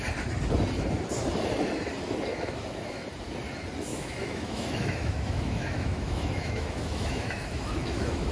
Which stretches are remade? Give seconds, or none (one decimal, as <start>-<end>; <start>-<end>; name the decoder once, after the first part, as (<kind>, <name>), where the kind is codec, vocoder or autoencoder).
2.3-3.0 (autoencoder, DAC-VAE); 3.9-8.3